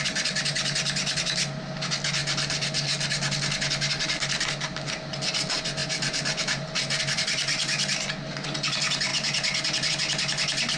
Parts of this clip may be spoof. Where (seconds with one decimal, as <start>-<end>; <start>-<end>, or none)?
none